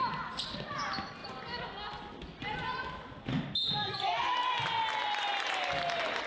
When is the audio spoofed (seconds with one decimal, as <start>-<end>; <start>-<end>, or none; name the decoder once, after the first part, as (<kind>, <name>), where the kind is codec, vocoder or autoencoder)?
none